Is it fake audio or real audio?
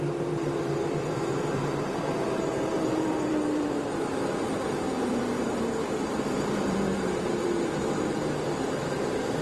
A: fake